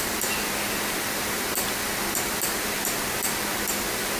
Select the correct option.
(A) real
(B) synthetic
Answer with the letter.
A